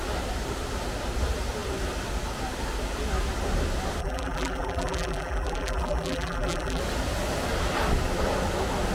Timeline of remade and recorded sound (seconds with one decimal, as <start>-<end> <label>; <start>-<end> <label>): 0.0-4.0 recorded; 4.0-6.8 remade; 6.8-8.9 recorded